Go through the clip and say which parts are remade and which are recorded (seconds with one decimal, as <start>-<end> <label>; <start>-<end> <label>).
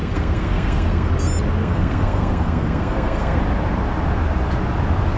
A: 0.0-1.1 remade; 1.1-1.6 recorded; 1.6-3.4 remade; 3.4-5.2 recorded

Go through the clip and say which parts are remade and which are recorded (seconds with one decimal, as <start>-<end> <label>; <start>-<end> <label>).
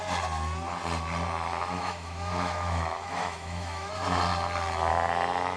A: 0.0-1.5 recorded; 1.5-3.9 remade; 3.9-5.6 recorded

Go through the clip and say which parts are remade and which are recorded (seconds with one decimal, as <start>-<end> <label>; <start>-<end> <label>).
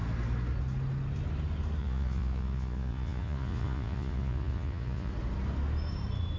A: 0.0-1.8 recorded; 1.8-5.1 remade; 5.1-6.4 recorded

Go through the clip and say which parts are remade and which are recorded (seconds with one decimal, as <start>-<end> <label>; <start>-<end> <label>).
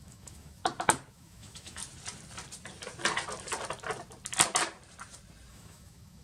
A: 0.0-0.6 remade; 0.6-1.1 recorded; 1.1-1.8 remade; 1.8-5.5 recorded; 5.5-6.2 remade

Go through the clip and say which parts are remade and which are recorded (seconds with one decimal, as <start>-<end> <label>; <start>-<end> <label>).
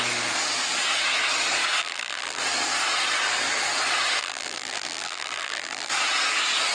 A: 0.0-1.8 recorded; 1.8-2.4 remade; 2.4-4.2 recorded; 4.2-5.9 remade; 5.9-6.7 recorded